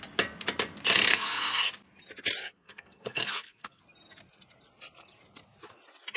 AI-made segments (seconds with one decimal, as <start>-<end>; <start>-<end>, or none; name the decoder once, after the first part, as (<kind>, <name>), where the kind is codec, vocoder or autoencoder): 1.1-1.7 (codec, SNAC); 2.4-3.8